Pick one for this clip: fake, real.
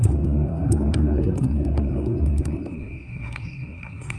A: fake